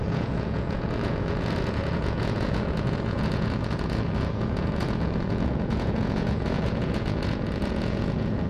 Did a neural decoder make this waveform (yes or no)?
yes